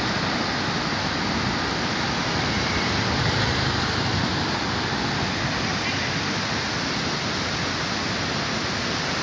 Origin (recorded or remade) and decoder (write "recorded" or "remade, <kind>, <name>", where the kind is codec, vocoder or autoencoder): recorded